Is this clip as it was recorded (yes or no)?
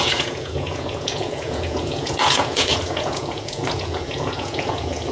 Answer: no